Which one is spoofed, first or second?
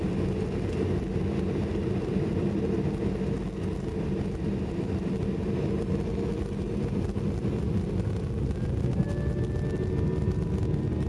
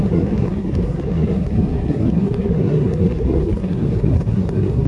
second